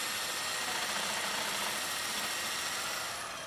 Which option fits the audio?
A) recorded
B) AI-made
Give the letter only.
A